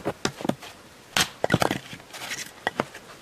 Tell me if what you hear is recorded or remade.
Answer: recorded